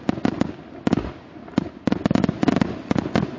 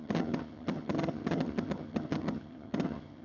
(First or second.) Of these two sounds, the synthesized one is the second